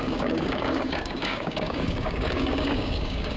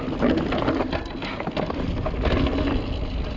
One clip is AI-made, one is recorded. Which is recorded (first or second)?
second